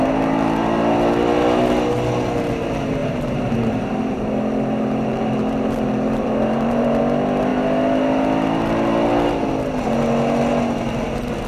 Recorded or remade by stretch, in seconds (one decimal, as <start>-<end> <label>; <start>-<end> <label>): 0.0-3.0 recorded; 3.0-7.0 remade; 7.0-11.5 recorded